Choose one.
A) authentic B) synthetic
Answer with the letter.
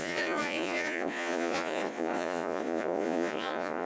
B